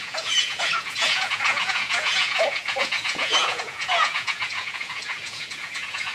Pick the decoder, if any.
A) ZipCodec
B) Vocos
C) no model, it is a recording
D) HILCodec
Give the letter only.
B